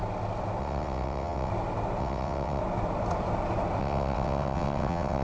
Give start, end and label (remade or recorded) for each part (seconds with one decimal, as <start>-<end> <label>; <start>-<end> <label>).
0.0-0.6 recorded; 0.6-1.5 remade; 1.5-2.0 recorded; 2.0-2.6 remade; 2.6-3.8 recorded; 3.8-5.2 remade